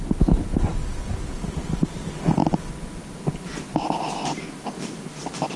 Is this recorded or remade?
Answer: recorded